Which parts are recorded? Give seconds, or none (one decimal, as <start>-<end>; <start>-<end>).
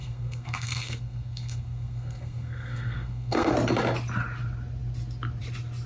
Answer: 3.5-5.9